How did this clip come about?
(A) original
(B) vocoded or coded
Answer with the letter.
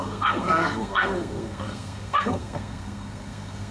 B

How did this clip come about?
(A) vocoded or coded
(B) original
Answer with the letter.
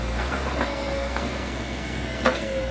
A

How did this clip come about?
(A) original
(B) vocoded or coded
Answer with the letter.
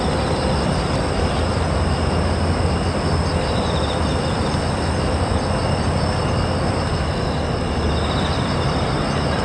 A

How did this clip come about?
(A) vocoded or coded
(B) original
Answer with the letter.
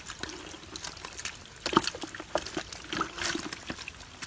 B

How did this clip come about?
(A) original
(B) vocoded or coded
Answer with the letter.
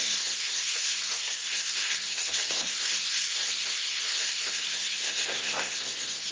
B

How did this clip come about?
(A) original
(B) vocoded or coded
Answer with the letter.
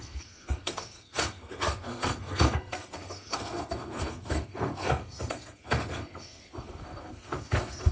B